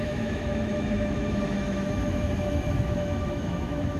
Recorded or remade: remade